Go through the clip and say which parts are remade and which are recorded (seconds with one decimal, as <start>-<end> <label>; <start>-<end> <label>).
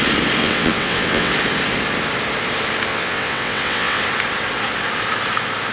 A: 0.0-0.4 recorded; 0.4-1.3 remade; 1.3-2.9 recorded; 2.9-4.0 remade; 4.0-5.7 recorded